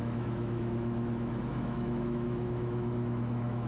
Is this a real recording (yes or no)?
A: no